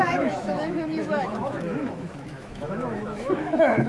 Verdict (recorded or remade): remade